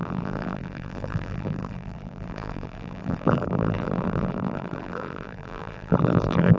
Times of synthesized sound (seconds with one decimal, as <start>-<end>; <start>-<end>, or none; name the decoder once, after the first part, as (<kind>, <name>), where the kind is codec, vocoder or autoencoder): 0.0-6.6 (vocoder, BigVGAN v2)